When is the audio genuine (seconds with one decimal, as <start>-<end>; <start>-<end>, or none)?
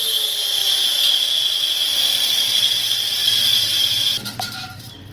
0.0-0.6; 1.3-3.2